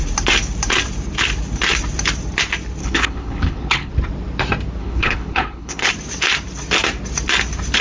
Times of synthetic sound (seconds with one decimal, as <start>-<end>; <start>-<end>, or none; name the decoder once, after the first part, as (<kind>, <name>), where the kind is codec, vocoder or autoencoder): 2.8-3.9 (codec, HILCodec); 4.8-5.9